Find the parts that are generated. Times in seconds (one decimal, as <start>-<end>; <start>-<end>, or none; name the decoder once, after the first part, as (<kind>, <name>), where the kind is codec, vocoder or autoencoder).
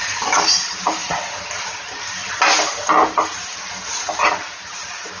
none